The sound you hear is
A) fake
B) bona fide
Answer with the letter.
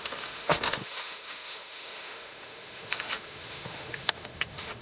A